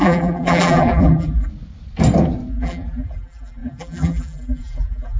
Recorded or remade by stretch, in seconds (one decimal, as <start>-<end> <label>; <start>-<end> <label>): 0.0-1.5 remade; 1.5-2.5 recorded; 2.5-5.2 remade